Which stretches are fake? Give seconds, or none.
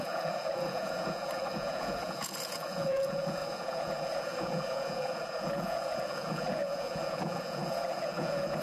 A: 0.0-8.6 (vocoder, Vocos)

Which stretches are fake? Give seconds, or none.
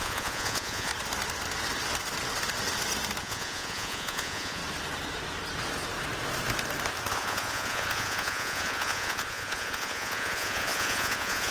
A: 0.0-0.9 (vocoder, Vocos); 3.2-4.6; 7.1-11.5